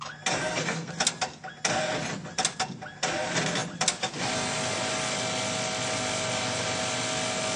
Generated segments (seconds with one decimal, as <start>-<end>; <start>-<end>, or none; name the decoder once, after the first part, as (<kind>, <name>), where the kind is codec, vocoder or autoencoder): 0.4-0.9 (codec, SNAC)